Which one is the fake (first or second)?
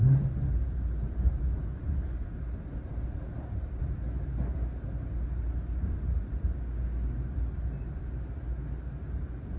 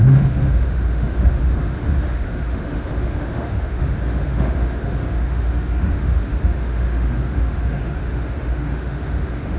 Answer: second